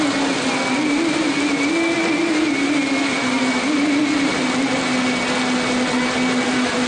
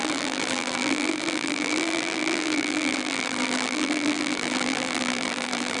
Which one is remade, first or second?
second